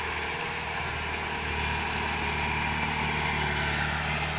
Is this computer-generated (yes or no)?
no